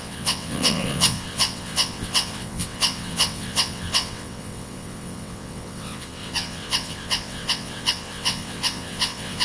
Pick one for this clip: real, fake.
fake